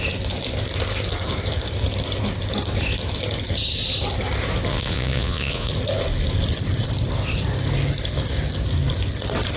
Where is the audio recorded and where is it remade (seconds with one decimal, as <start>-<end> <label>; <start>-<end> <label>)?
0.0-4.7 recorded; 4.7-5.7 remade; 5.7-9.6 recorded